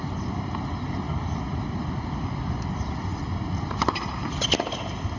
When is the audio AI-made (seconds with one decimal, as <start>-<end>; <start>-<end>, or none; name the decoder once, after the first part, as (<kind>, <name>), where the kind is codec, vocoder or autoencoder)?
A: none